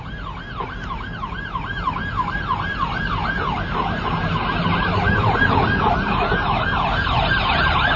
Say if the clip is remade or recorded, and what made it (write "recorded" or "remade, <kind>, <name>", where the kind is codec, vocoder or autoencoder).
recorded